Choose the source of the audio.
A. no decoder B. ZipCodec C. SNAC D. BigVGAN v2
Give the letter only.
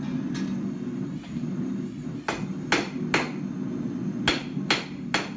A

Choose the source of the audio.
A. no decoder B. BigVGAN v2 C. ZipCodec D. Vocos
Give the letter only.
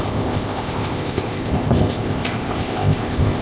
C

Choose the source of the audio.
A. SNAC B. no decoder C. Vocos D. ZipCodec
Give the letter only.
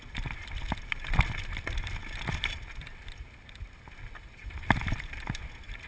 B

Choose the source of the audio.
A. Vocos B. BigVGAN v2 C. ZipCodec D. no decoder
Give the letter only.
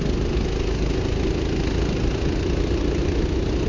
D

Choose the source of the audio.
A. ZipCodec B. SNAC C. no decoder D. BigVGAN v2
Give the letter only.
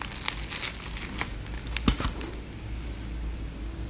C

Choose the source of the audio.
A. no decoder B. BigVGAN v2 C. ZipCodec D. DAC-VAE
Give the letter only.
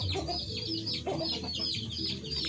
A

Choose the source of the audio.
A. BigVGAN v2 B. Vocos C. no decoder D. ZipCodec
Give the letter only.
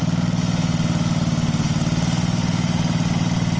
C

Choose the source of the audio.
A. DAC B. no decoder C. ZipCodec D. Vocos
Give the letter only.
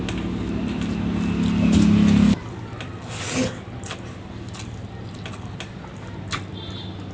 B